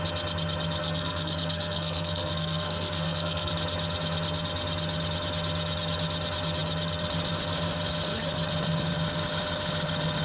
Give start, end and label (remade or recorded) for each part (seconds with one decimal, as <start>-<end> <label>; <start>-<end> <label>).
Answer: 0.0-0.8 recorded; 0.8-3.5 remade; 3.5-10.2 recorded